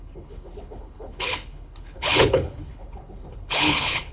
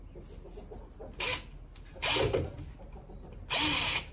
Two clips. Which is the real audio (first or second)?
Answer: second